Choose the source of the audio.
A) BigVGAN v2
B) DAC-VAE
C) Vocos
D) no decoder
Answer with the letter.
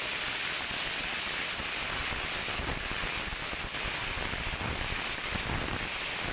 D